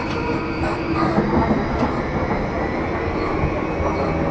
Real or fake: real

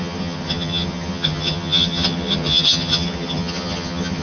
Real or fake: fake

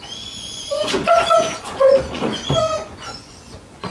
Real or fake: fake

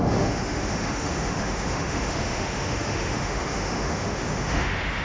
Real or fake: fake